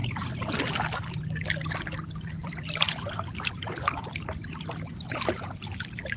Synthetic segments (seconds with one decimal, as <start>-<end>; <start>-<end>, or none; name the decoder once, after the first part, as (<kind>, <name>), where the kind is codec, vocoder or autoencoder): 0.0-1.2 (vocoder, BigVGAN v2); 2.4-4.5